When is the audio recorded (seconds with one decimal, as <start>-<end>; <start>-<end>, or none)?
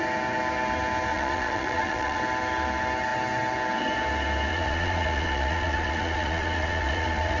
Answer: 0.0-1.1; 2.2-4.5